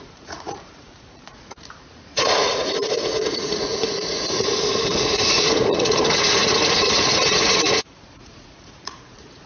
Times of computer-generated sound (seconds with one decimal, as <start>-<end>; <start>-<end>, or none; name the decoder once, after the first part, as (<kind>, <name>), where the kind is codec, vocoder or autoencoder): 0.0-9.5 (vocoder, Vocos)